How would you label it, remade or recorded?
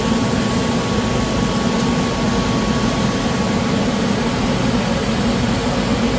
recorded